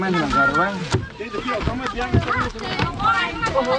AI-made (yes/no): no